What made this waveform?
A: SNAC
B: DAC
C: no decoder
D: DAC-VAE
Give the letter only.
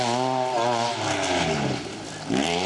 C